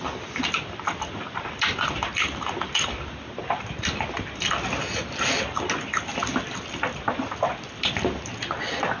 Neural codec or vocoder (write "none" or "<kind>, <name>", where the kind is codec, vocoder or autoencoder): none